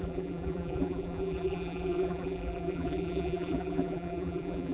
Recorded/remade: remade